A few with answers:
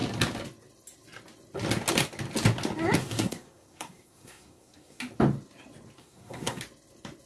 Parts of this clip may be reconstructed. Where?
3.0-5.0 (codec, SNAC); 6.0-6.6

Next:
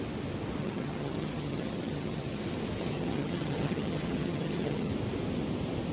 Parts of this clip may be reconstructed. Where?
0.6-2.4 (vocoder, HiFi-GAN); 2.8-4.9

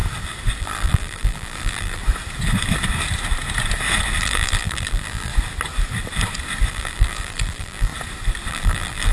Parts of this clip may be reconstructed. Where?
0.6-2.0 (vocoder, BigVGAN v2); 4.2-5.3; 6.7-7.9; 8.5-9.1

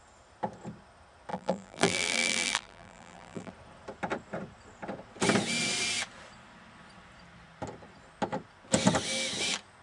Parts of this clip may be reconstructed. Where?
1.3-3.5 (vocoder, BigVGAN v2)